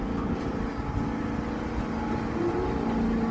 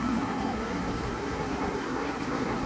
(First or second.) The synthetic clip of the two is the second